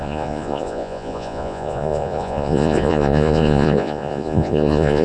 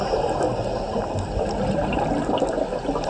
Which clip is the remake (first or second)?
first